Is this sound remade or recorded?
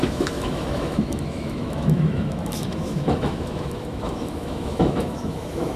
remade